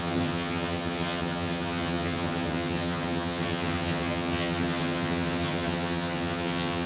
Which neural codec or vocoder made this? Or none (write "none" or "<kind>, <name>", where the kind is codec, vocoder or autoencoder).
vocoder, HiFi-GAN